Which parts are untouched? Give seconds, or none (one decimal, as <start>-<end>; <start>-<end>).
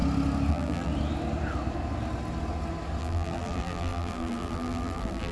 0.0-0.5; 0.9-3.0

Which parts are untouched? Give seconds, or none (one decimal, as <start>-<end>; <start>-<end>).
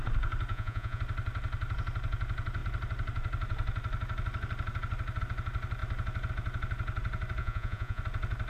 0.0-0.5; 1.0-7.4; 8.0-8.5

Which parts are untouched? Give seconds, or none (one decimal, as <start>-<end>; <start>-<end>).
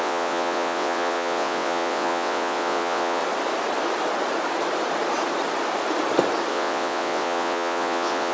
3.2-6.5